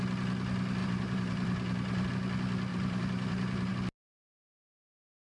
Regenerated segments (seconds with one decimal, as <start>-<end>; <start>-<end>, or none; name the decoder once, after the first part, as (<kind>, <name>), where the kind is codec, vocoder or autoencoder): 0.8-2.1 (vocoder, BigVGAN v2); 2.7-3.7